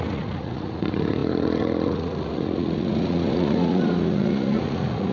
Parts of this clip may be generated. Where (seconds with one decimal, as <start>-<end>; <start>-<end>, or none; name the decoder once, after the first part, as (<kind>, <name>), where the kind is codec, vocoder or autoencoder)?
0.0-5.1 (vocoder, Vocos)